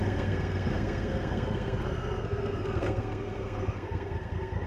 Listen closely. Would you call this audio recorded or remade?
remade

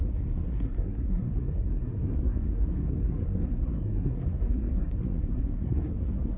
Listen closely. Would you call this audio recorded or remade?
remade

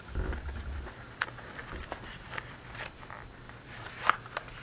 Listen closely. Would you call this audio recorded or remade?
recorded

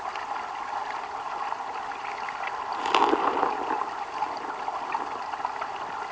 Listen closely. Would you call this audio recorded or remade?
recorded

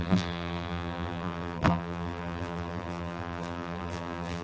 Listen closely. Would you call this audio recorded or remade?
remade